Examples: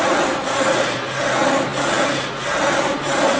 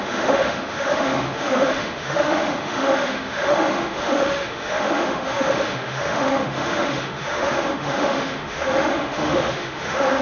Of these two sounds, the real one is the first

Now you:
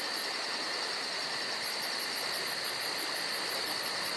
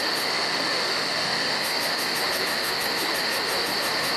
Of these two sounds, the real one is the first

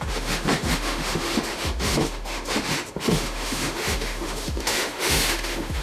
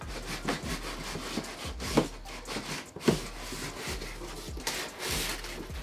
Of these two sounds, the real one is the second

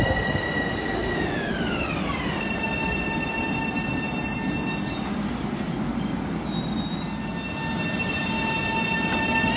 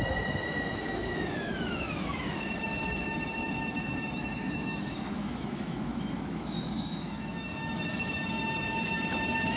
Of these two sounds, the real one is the first